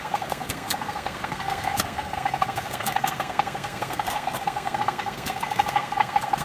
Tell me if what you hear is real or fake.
fake